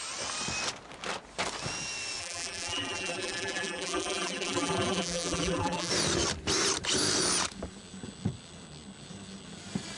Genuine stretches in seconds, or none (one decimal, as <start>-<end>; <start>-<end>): 0.0-2.2; 5.9-10.0